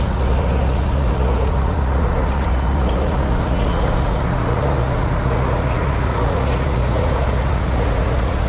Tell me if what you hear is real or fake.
fake